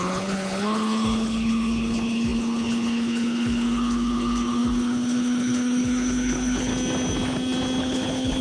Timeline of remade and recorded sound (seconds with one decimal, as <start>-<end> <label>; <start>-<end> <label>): 0.0-6.7 remade; 6.7-7.8 recorded; 7.8-8.4 remade